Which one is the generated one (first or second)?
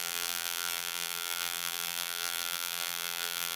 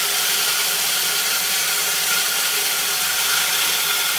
first